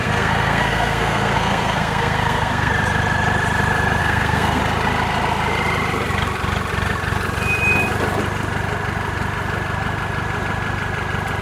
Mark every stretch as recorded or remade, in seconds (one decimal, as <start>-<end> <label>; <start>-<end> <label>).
0.0-2.7 remade; 2.7-4.0 recorded; 4.0-4.6 remade; 4.6-11.4 recorded